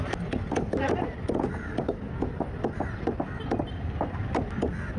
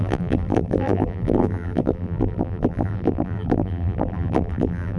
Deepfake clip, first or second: second